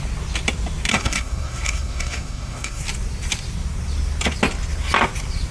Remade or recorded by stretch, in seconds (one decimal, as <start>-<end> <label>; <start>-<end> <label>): 0.0-0.9 recorded; 0.9-2.8 remade; 2.8-5.5 recorded